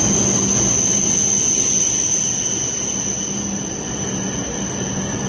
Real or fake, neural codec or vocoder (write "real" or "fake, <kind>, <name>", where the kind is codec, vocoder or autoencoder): real